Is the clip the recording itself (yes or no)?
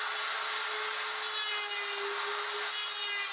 yes